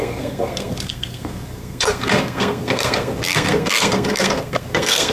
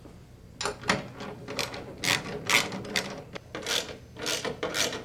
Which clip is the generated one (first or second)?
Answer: first